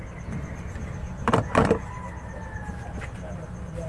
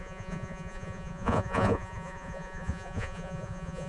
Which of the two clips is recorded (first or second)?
first